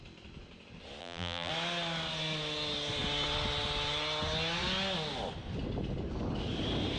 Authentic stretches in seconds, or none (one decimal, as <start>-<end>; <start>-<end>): 0.0-1.0; 1.5-7.0